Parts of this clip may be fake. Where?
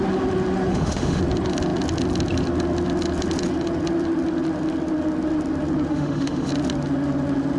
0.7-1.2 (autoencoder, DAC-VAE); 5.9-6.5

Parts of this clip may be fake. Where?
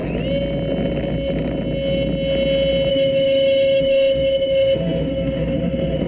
2.9-6.1 (autoencoder, DAC-VAE)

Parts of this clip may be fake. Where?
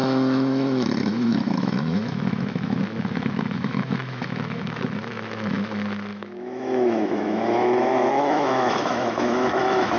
0.0-10.0 (autoencoder, DAC-VAE)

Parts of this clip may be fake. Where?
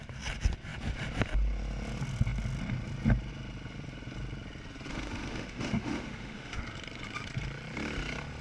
4.9-6.6 (autoencoder, DAC-VAE)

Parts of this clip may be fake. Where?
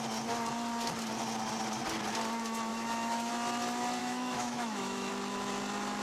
2.7-3.3 (autoencoder, DAC-VAE); 4.0-5.1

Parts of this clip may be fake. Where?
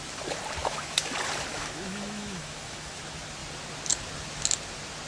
0.6-1.1 (autoencoder, DAC-VAE); 1.5-3.0